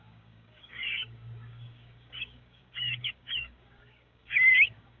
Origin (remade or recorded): remade